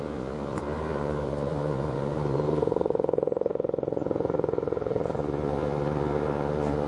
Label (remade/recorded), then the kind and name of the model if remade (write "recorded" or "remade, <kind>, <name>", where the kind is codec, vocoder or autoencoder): remade, vocoder, Vocos